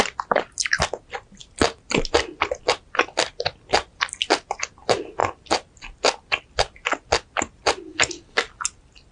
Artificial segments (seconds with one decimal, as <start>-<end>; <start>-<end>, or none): none

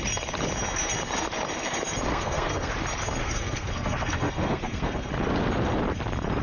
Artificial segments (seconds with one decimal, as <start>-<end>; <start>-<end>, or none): 2.1-2.7; 3.2-5.1

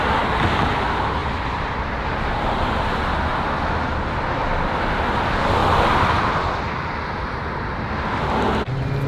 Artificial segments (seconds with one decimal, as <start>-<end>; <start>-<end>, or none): 1.2-1.7

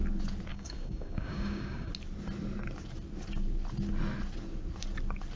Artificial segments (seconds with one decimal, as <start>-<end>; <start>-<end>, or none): 0.5-1.9

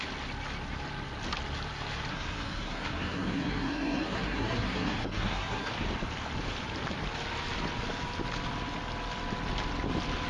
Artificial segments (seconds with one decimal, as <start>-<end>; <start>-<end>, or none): 2.1-5.7

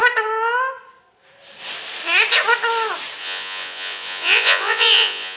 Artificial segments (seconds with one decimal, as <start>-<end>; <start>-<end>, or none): 3.2-5.4